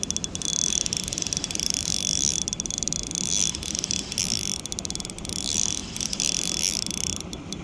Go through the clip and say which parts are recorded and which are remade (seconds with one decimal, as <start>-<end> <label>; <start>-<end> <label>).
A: 0.0-7.6 recorded